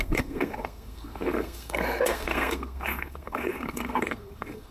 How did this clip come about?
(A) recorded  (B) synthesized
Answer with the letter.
B